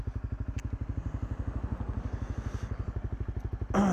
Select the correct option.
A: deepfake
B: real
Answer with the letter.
B